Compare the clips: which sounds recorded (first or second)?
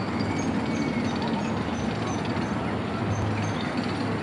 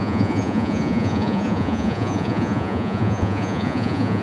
first